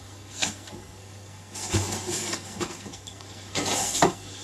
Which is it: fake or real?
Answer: fake